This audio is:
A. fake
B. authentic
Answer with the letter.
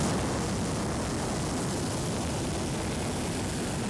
B